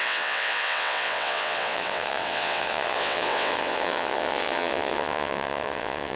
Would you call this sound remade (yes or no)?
yes